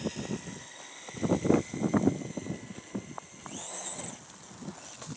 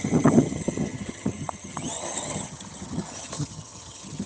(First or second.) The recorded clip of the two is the first